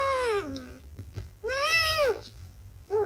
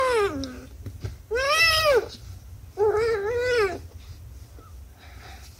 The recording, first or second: second